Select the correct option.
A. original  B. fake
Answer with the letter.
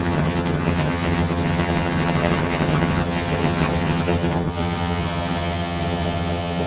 B